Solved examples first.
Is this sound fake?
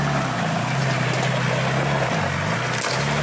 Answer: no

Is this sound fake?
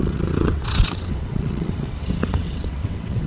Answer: yes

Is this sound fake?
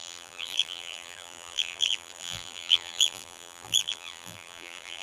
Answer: yes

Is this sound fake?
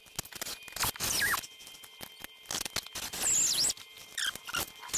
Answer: no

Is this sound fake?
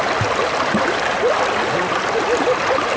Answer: no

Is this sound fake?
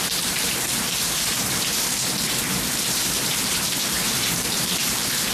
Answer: yes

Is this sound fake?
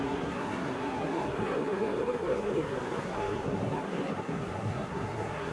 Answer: yes